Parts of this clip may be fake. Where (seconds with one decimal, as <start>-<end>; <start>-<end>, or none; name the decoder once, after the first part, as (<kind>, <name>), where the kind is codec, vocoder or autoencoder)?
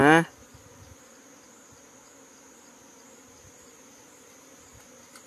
none